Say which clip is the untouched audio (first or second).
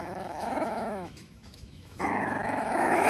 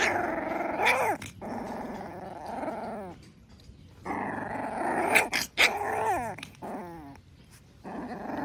second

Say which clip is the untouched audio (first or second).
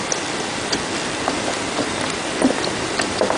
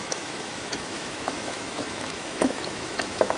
first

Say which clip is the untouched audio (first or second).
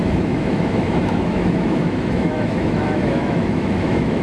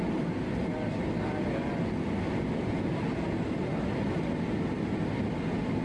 second